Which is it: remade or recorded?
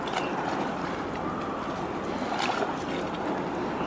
recorded